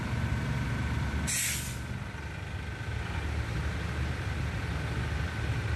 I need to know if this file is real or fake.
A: real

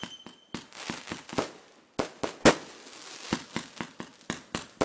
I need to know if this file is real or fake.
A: real